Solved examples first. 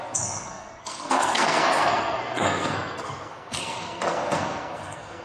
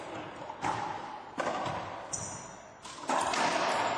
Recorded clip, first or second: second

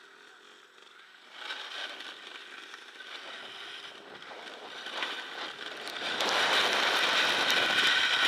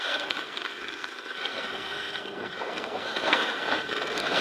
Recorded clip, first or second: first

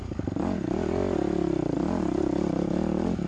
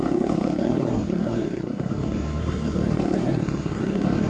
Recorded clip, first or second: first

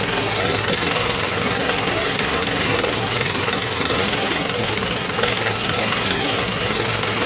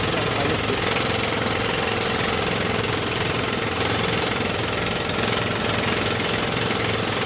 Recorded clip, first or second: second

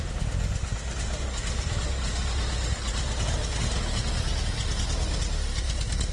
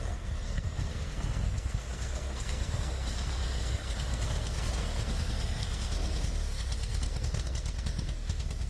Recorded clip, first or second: first